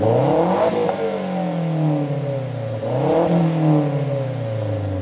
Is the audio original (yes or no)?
yes